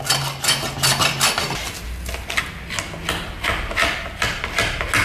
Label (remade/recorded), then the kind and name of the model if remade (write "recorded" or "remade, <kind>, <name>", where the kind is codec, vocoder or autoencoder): recorded